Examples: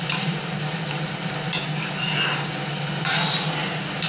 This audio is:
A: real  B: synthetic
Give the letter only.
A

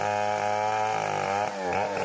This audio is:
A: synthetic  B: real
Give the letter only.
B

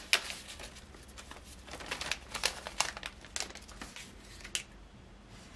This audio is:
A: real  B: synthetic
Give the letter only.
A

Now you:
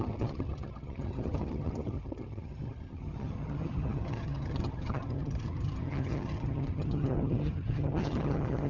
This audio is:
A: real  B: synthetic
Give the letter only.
B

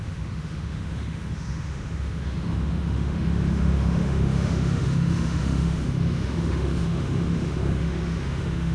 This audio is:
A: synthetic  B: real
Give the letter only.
A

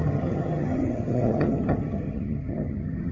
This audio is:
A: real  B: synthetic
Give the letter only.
B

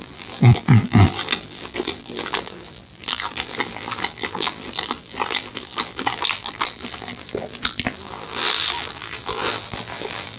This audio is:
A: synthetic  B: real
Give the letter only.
A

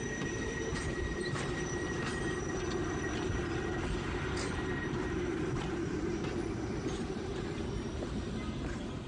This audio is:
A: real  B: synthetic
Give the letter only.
B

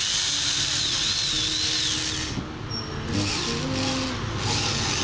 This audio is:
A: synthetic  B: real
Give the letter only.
B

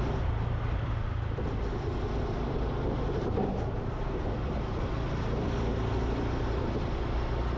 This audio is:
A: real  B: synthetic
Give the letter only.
A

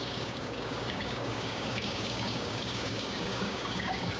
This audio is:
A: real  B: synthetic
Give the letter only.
B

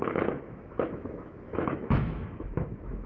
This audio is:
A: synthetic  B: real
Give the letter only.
A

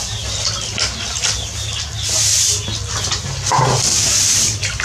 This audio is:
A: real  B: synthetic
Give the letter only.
A